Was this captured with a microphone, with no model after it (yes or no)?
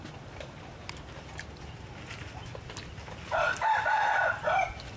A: yes